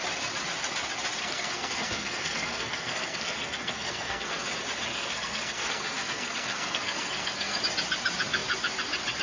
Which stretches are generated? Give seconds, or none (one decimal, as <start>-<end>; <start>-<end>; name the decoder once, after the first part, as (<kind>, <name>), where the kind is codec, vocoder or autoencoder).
1.2-4.5 (codec, SNAC); 4.9-7.6